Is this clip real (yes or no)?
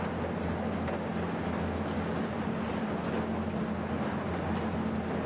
yes